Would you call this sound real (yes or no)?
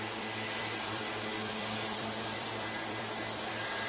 no